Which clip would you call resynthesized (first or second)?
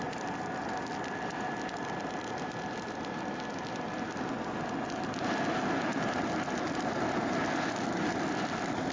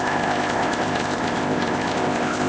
second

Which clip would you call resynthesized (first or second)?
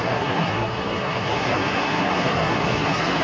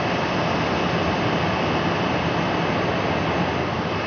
first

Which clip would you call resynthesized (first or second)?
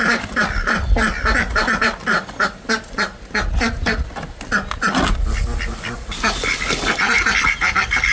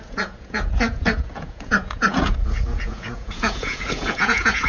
second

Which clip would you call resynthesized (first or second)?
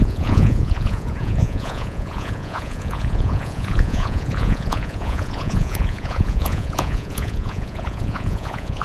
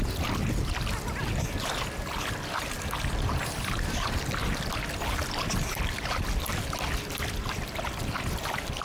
first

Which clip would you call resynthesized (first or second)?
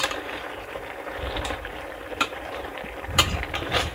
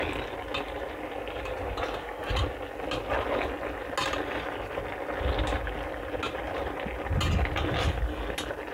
first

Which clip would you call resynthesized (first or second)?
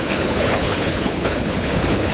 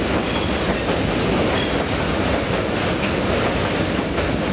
first